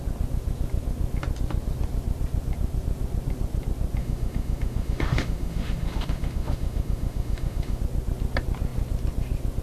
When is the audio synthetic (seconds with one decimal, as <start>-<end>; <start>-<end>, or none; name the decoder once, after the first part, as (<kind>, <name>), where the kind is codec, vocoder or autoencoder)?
4.0-7.8 (autoencoder, DAC-VAE)